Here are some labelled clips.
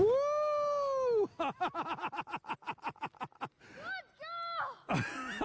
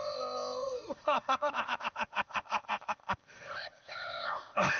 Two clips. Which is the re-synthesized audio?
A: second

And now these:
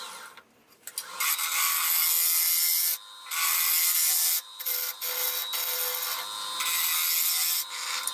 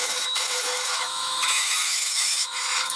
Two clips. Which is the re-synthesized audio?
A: second